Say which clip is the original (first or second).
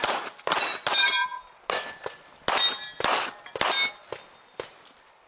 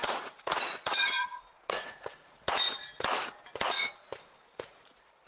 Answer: first